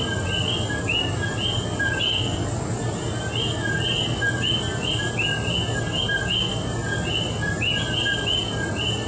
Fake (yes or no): no